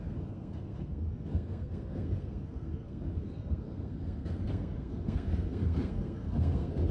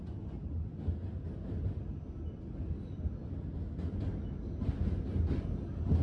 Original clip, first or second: second